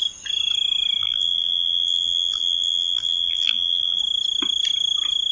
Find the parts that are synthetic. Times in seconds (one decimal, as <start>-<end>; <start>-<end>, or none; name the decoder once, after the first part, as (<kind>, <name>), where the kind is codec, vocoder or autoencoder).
1.0-4.0 (vocoder, BigVGAN v2)